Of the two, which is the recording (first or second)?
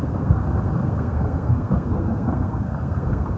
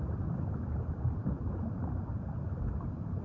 second